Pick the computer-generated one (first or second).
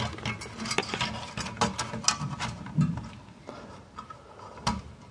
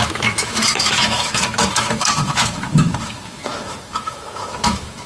second